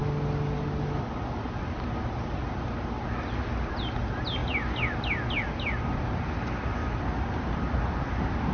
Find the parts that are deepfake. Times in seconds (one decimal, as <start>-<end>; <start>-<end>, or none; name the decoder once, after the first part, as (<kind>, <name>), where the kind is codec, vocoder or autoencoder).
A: none